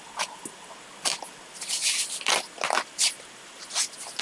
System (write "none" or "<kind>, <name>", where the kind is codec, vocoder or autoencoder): none